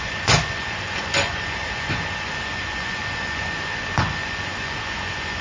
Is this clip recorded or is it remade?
remade